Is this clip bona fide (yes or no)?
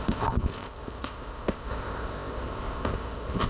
no